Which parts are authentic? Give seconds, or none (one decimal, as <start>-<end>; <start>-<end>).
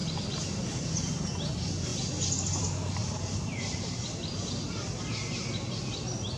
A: 0.0-1.9; 2.6-3.0; 5.9-6.4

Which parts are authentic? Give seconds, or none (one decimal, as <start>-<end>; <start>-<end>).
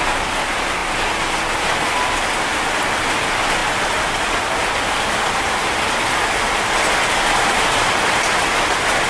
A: 0.0-9.1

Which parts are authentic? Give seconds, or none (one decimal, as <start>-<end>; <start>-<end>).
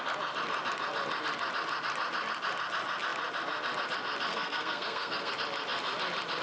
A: 0.0-4.3; 5.3-6.4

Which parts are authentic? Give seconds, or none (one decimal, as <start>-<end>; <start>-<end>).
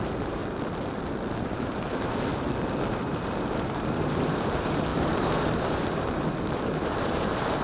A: 0.4-1.4; 2.3-2.9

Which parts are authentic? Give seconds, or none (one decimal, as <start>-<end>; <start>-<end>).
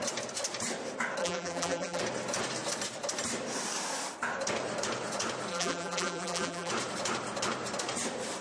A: 0.0-1.2; 2.0-5.5; 6.7-8.4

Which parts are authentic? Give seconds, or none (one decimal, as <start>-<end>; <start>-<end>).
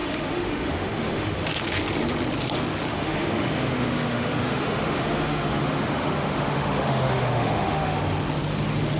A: 1.6-2.9; 8.0-9.0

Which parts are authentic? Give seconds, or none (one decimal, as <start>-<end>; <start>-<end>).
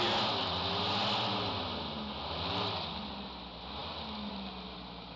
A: 0.0-5.2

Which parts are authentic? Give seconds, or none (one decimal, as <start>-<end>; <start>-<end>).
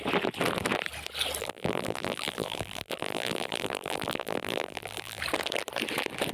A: 0.0-1.4; 5.2-6.3